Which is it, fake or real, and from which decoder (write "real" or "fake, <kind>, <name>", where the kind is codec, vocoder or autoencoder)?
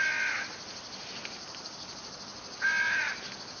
real